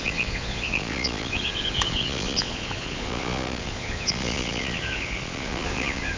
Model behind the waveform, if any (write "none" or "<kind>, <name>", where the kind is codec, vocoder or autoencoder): vocoder, Vocos